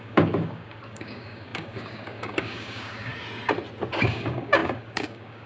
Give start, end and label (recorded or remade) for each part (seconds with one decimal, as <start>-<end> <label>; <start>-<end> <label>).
0.0-3.1 remade; 3.1-3.9 recorded; 3.9-5.5 remade